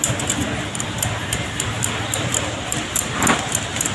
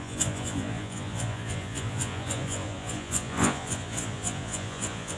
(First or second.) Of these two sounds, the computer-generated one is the second